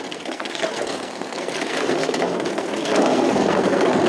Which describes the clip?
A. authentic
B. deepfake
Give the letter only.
B